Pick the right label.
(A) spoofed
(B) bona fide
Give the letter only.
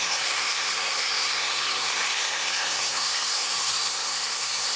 A